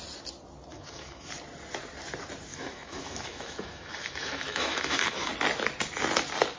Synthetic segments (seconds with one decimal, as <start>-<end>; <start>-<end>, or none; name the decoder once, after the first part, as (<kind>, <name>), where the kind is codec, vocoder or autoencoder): 0.7-1.3 (autoencoder, DAC-VAE); 2.5-5.3